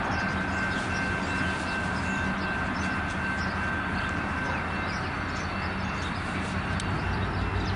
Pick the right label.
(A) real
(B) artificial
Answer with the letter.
A